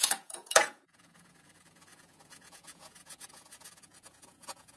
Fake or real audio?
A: fake